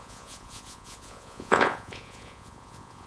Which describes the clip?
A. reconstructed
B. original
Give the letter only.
A